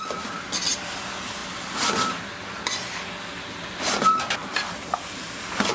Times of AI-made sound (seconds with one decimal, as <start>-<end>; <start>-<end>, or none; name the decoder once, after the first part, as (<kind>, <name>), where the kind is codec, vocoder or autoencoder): none